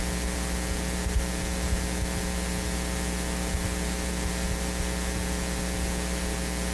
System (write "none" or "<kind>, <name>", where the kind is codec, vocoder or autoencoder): none